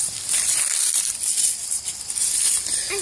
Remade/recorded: recorded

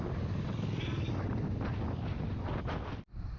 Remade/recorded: recorded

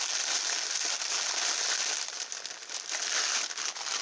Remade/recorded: recorded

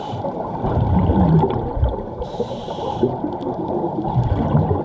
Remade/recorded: remade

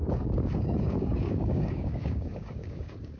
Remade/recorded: remade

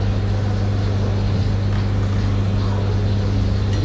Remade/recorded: recorded